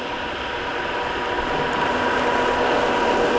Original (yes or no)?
yes